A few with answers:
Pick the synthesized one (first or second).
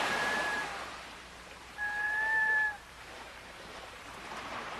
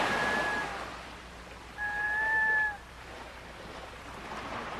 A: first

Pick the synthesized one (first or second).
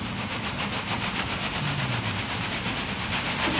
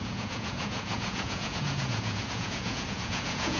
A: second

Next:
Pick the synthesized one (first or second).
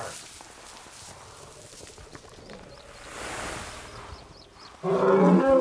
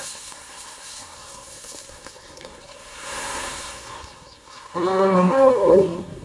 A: second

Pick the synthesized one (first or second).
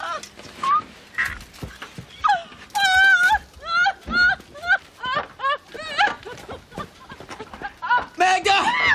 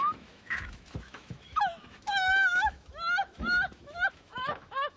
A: second